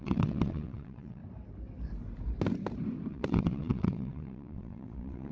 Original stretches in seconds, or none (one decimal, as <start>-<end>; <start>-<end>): 1.2-3.1